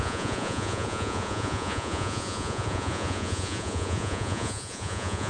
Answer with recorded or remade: remade